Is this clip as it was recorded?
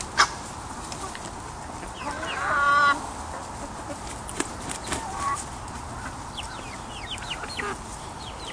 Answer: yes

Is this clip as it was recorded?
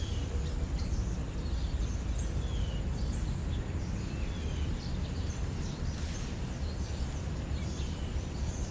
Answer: no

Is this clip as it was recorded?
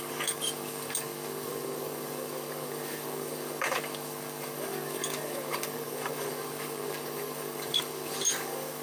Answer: no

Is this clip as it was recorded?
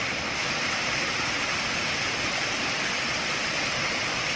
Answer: no